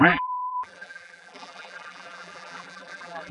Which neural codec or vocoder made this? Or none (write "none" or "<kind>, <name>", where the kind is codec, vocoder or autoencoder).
vocoder, BigVGAN v2